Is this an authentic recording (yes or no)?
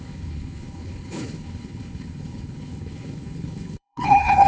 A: no